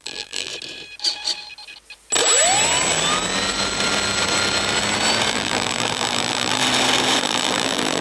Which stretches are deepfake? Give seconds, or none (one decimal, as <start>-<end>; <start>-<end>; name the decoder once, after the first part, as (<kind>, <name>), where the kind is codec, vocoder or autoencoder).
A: 0.0-0.5 (vocoder, BigVGAN v2); 5.3-6.6; 7.2-8.0